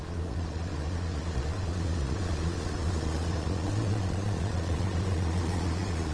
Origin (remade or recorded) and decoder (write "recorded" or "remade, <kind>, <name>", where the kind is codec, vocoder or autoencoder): remade, vocoder, Vocos